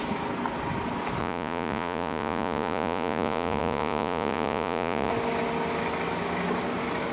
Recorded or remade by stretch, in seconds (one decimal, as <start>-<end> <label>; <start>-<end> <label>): 0.0-1.2 recorded; 1.2-5.1 remade; 5.1-7.1 recorded

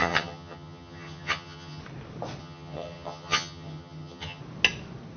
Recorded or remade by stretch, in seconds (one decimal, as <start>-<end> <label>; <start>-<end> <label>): 0.0-1.8 remade; 1.8-2.4 recorded; 2.4-4.4 remade; 4.4-5.2 recorded

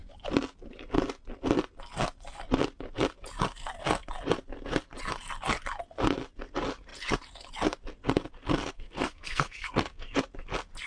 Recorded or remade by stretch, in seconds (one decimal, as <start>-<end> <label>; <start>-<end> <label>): 0.0-8.6 recorded; 8.6-10.2 remade; 10.2-10.9 recorded

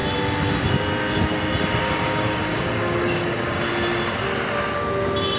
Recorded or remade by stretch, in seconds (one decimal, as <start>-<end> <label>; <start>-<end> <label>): 0.0-1.8 recorded; 1.8-3.7 remade; 3.7-5.4 recorded

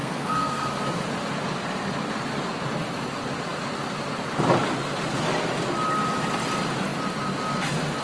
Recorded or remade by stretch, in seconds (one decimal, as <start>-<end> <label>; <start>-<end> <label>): 0.0-0.7 remade; 0.7-8.0 recorded